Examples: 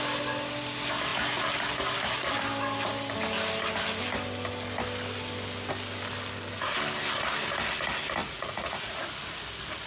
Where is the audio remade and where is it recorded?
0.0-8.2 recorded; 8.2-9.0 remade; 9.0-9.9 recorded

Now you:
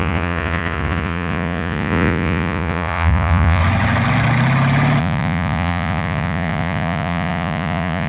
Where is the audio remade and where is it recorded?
0.0-3.6 remade; 3.6-5.0 recorded; 5.0-8.1 remade